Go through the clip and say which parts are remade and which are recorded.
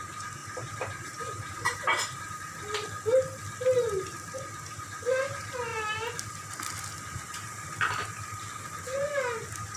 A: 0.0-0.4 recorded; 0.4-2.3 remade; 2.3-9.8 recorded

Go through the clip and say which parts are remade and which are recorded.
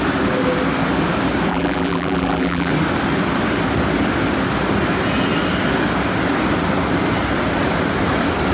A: 0.0-1.5 recorded; 1.5-2.7 remade; 2.7-8.5 recorded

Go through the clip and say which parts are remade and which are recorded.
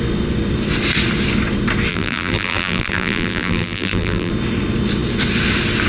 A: 0.0-1.9 recorded; 1.9-4.3 remade; 4.3-5.9 recorded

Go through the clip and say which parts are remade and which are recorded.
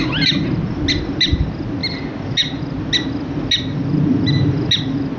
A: 0.0-5.2 recorded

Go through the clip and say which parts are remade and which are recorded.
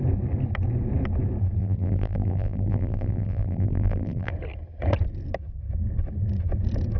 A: 0.0-1.6 recorded; 1.6-4.3 remade; 4.3-7.0 recorded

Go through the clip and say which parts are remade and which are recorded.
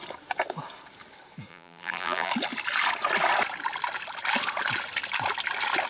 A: 0.0-1.5 recorded; 1.5-2.3 remade; 2.3-5.9 recorded